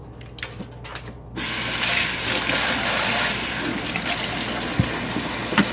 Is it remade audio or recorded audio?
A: recorded